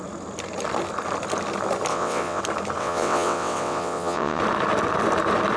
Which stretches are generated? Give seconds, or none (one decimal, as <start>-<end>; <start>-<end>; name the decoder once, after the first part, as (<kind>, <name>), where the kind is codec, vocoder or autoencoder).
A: 1.9-2.4 (vocoder, WaveNeXt); 2.8-4.4